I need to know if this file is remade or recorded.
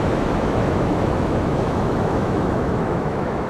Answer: remade